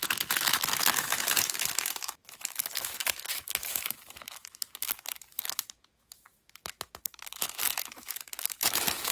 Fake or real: fake